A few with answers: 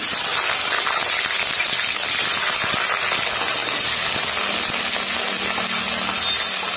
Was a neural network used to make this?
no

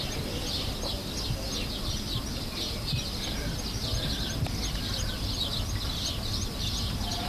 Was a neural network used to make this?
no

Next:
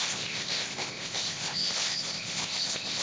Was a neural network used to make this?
yes